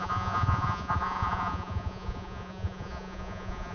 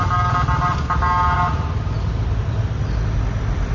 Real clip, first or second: second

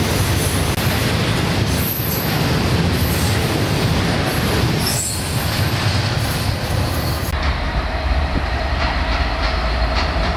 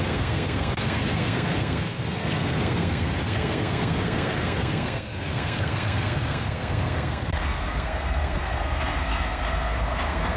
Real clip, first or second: first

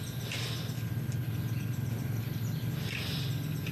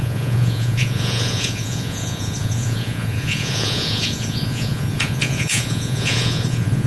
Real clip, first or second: first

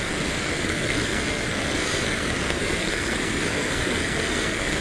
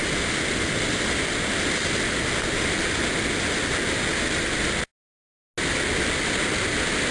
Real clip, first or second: second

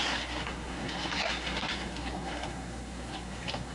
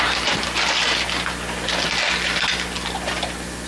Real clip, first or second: second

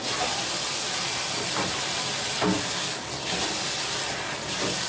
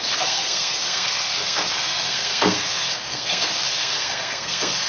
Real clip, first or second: first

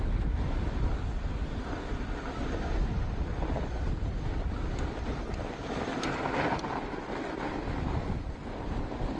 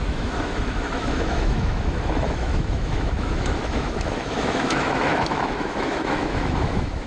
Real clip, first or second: first